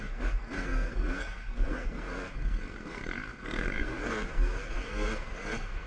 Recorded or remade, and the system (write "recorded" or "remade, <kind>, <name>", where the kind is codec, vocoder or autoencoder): remade, codec, SNAC